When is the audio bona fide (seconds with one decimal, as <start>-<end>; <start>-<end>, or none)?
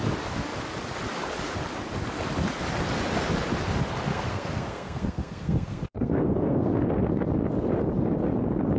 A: 0.0-4.1; 6.7-8.8